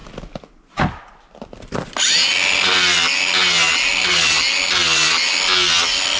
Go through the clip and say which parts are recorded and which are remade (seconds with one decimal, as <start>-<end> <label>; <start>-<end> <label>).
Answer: 0.0-6.2 recorded